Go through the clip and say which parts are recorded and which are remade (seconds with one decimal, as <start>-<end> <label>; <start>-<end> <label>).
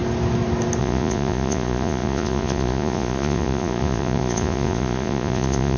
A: 0.0-0.8 recorded; 0.8-5.8 remade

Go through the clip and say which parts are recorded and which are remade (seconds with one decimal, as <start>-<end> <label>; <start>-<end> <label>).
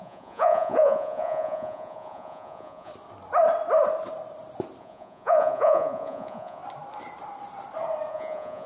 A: 0.0-2.9 remade; 2.9-4.8 recorded; 4.8-6.6 remade; 6.6-8.1 recorded; 8.1-8.7 remade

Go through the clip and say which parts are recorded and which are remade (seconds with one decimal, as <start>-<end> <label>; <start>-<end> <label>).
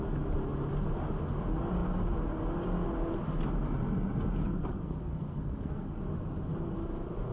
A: 0.0-4.4 recorded; 4.4-6.0 remade; 6.0-7.3 recorded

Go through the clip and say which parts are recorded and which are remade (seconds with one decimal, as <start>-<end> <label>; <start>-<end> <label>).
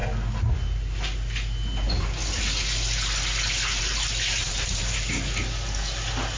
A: 0.0-4.3 recorded; 4.3-5.1 remade; 5.1-6.4 recorded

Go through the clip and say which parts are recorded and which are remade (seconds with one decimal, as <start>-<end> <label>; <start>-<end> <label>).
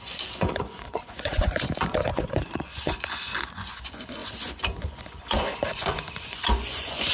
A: 0.0-7.1 remade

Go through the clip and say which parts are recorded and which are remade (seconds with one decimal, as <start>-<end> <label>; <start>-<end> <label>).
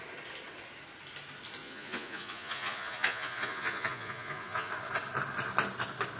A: 0.0-1.6 recorded; 1.6-4.7 remade; 4.7-6.2 recorded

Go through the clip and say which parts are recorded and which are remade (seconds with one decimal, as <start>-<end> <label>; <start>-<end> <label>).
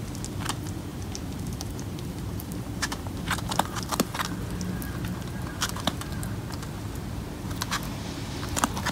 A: 0.0-0.9 recorded; 0.9-3.9 remade; 3.9-8.9 recorded